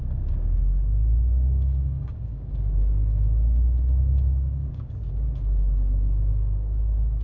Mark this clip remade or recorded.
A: remade